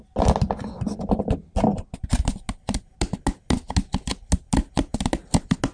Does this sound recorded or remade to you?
recorded